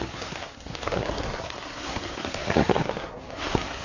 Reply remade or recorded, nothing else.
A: remade